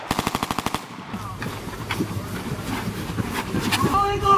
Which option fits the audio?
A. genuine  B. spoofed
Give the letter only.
B